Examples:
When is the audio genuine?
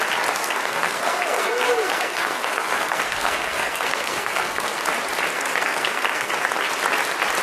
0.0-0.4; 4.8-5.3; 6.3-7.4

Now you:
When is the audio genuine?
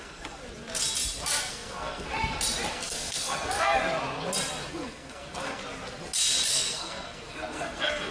0.4-1.4; 2.1-2.7; 3.8-4.7; 5.6-6.5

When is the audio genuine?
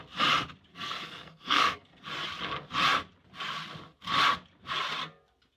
0.0-0.7; 2.0-5.6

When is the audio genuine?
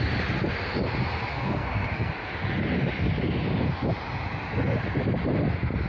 0.0-1.3; 2.1-5.9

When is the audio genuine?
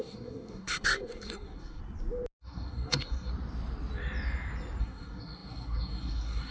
1.8-2.4; 3.3-4.8